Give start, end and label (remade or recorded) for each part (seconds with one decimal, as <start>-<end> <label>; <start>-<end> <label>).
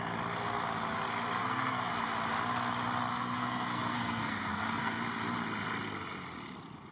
0.0-1.4 recorded; 1.4-1.9 remade; 1.9-3.1 recorded; 3.1-5.0 remade; 5.0-6.9 recorded